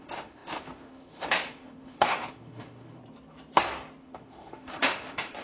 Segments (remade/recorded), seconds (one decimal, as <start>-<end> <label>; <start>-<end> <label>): 0.0-3.0 remade; 3.0-4.0 recorded; 4.0-5.4 remade